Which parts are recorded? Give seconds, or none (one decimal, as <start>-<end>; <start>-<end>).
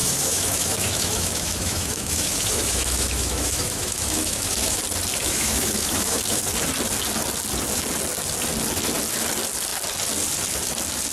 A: 4.8-5.2; 6.4-11.1